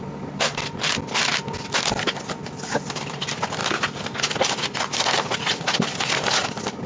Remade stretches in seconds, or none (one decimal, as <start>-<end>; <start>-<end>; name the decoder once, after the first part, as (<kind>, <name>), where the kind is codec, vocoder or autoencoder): none